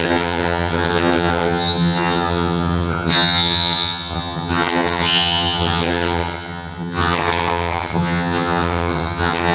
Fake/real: fake